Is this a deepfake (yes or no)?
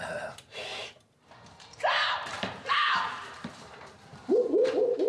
yes